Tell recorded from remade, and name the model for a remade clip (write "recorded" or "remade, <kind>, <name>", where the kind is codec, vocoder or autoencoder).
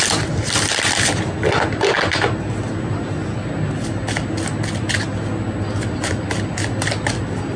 recorded